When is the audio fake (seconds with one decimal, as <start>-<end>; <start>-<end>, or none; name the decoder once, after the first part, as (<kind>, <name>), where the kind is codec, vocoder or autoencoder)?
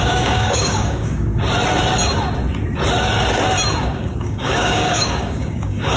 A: 0.0-1.3 (codec, DAC); 3.8-6.0